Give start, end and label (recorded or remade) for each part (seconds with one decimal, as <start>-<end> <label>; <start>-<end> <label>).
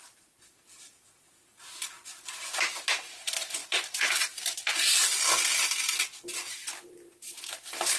0.0-8.0 recorded